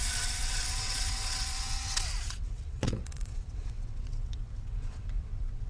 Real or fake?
fake